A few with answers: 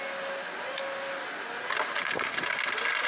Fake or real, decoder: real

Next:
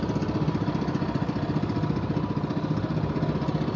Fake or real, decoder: real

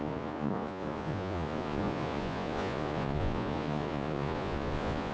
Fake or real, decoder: fake, vocoder, Vocos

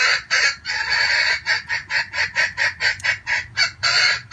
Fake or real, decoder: fake, vocoder, Vocos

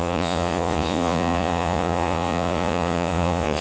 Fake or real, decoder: fake, vocoder, Vocos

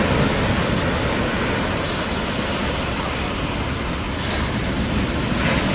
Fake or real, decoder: real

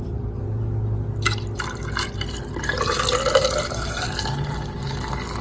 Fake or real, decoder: real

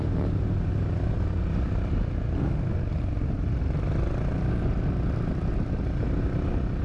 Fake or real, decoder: real